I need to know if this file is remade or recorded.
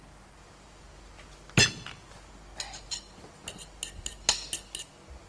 recorded